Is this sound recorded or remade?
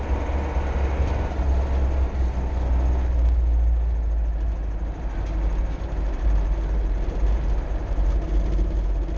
recorded